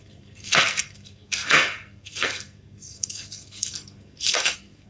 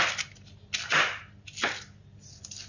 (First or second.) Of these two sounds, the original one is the second